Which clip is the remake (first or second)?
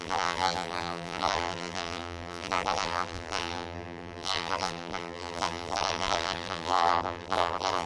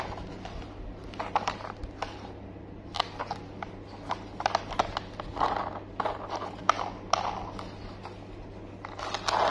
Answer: first